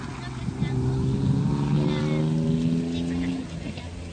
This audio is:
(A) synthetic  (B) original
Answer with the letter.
B